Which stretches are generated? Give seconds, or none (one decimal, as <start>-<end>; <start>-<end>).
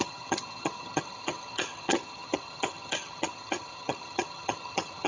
0.0-5.1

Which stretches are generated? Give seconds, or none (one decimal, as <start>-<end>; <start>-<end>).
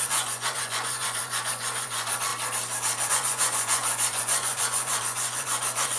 0.0-2.3; 3.1-6.0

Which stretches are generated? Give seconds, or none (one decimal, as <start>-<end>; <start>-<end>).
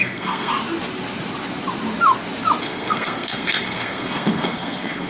0.0-0.5; 2.6-5.1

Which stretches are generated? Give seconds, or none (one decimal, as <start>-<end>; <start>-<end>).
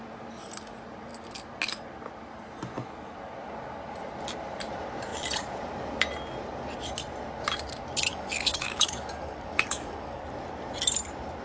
8.1-10.2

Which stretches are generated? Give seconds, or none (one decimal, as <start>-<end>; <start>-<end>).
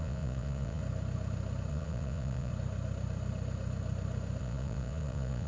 0.0-0.8; 1.7-2.5; 4.4-5.5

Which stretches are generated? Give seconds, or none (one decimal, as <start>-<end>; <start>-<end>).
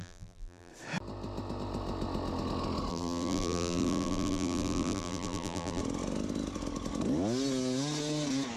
0.0-0.7; 2.9-5.8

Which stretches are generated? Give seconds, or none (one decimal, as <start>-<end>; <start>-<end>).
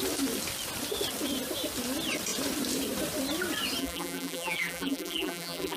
3.8-5.8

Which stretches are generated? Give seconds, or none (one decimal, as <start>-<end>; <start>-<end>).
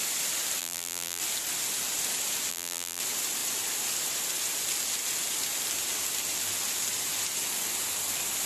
0.6-1.2; 2.5-3.0